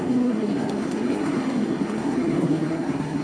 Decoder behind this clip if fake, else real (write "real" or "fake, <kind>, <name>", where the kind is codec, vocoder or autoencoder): fake, codec, SNAC